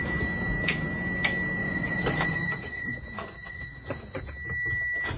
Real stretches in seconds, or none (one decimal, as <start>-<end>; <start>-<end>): 0.0-1.6; 4.2-5.2